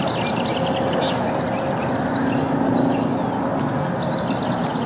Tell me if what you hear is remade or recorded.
recorded